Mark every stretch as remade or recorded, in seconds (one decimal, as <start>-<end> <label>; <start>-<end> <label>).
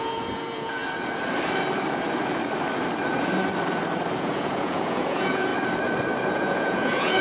0.0-0.8 remade; 0.8-4.2 recorded; 4.2-5.5 remade; 5.5-6.3 recorded; 6.3-7.2 remade